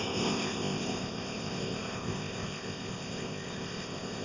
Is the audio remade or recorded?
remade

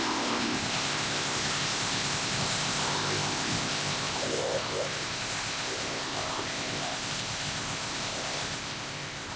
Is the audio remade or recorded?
remade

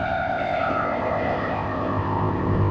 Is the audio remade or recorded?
remade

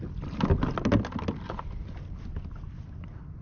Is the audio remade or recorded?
recorded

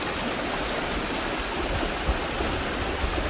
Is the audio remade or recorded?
recorded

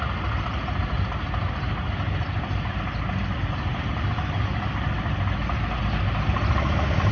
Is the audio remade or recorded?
recorded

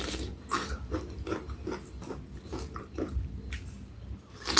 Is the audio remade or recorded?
recorded